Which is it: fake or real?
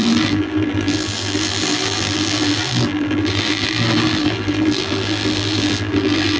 fake